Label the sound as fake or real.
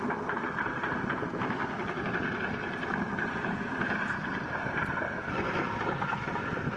real